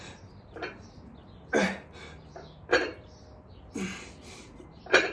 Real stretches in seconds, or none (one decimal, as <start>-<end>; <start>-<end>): 0.0-5.1